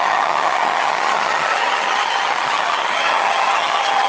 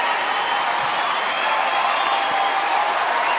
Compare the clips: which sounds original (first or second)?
second